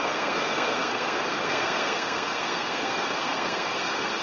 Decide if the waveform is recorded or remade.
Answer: remade